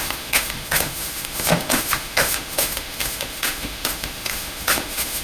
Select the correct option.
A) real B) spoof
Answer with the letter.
B